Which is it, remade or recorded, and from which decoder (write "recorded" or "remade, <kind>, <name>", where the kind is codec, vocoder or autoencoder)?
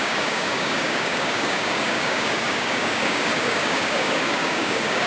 remade, codec, DAC